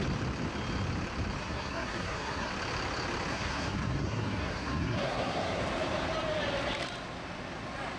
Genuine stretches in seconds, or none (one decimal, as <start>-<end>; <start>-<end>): 0.0-1.4; 2.5-3.3; 5.6-8.0